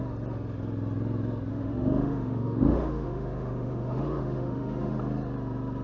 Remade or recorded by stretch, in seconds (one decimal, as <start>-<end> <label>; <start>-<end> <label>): 0.0-1.5 recorded; 1.5-5.0 remade; 5.0-5.8 recorded